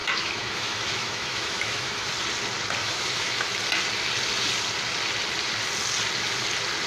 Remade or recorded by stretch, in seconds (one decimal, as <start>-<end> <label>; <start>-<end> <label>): 0.0-2.1 remade; 2.1-2.8 recorded; 2.8-3.5 remade; 3.5-6.9 recorded